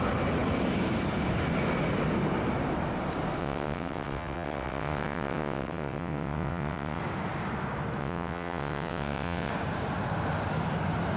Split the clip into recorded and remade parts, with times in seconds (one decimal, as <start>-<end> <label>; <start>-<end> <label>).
0.0-3.4 recorded; 3.4-7.0 remade; 7.0-8.0 recorded; 8.0-9.5 remade; 9.5-11.2 recorded